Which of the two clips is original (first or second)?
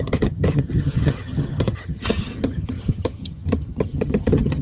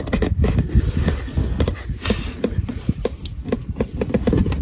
second